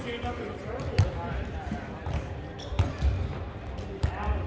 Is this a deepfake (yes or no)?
no